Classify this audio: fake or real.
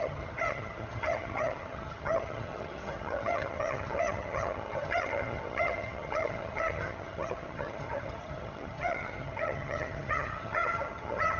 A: fake